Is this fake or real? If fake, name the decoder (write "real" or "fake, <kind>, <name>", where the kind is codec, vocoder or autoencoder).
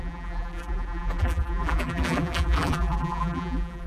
fake, vocoder, BigVGAN v2